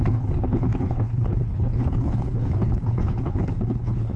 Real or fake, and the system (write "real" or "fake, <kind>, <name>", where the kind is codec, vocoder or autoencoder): fake, codec, HILCodec